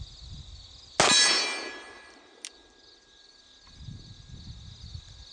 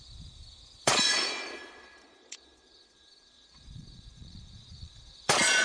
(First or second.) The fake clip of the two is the second